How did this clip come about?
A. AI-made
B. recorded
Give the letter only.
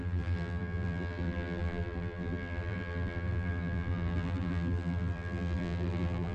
A